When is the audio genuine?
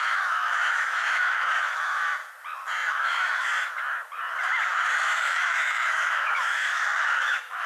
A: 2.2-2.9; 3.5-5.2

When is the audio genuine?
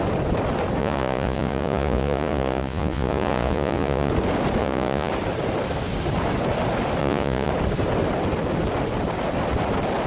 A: 0.0-0.8; 4.1-4.6; 5.1-7.0; 7.5-10.1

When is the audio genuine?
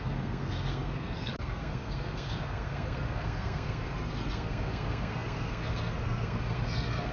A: none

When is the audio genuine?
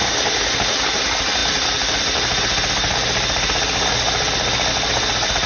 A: 0.0-5.5